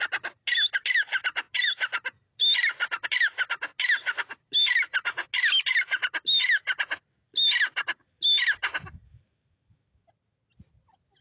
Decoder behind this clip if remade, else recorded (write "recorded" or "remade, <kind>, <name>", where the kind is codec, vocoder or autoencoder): recorded